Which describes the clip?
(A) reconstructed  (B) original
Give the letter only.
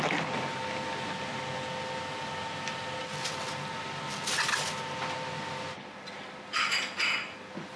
B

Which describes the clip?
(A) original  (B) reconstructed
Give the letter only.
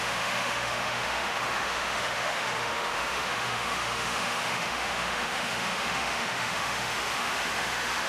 B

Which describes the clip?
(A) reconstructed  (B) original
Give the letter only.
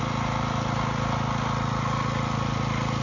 B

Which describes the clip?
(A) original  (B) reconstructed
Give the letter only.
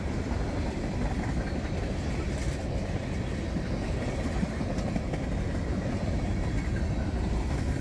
A